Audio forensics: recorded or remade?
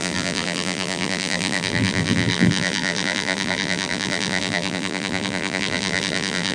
remade